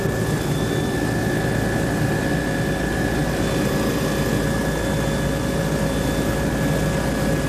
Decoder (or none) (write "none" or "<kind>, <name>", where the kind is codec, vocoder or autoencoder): none